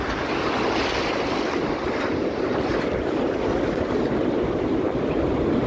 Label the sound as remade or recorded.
recorded